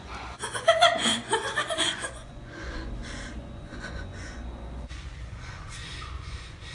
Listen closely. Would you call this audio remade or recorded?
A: remade